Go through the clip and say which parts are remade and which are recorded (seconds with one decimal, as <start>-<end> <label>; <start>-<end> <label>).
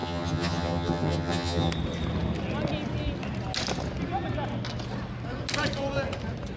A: 0.0-1.7 remade; 1.7-6.6 recorded